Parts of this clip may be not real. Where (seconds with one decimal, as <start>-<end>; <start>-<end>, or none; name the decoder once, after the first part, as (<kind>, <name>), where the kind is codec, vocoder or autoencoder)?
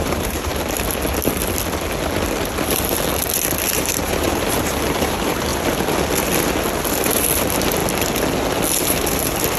0.0-0.5 (vocoder, BigVGAN v2); 3.7-5.5; 6.9-7.8; 8.8-9.6